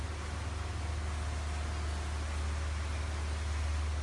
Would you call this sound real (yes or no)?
yes